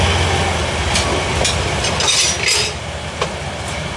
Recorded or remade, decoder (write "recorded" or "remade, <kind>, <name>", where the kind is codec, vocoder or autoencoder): recorded